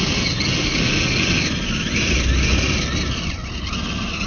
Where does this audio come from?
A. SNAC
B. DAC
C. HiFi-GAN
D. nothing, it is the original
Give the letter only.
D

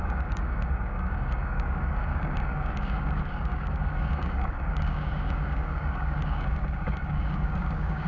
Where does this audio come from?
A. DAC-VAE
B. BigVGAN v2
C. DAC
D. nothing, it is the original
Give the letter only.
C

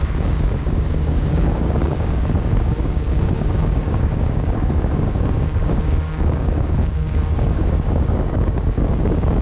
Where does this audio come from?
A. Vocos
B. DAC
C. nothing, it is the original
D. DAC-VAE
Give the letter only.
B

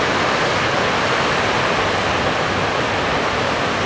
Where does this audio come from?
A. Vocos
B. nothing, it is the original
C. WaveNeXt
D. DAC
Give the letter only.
B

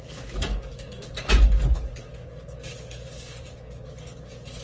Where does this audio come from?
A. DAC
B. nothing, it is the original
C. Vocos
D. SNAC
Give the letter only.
A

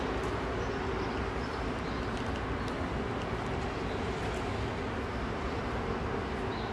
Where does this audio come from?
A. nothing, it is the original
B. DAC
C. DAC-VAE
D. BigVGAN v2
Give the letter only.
A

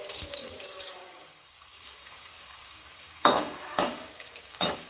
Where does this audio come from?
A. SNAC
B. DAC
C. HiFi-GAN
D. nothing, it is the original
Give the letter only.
B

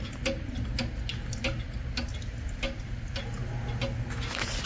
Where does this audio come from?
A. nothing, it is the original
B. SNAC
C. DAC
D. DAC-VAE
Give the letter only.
A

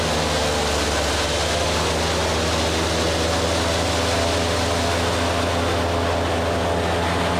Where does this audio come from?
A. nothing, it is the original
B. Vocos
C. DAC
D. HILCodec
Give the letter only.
A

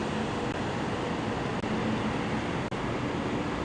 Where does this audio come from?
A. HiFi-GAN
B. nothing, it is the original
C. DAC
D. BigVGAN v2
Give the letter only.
B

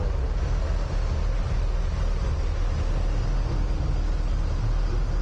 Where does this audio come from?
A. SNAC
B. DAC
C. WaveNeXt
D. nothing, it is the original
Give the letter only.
D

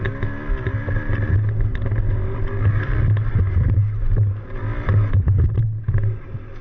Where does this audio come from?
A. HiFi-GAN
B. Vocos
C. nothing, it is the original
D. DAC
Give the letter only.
C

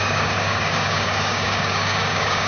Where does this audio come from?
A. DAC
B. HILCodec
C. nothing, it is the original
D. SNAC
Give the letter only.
A